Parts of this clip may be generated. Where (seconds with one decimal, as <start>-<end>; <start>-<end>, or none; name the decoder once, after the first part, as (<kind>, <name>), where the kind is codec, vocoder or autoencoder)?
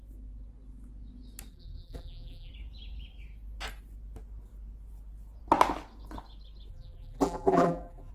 1.5-2.5 (vocoder, BigVGAN v2); 6.7-8.1